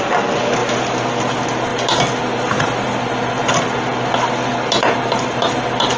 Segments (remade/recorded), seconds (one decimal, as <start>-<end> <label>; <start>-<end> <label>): 0.0-6.0 recorded